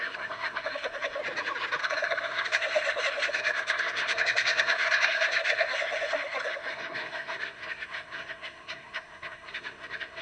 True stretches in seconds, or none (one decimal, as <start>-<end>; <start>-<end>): 1.2-1.8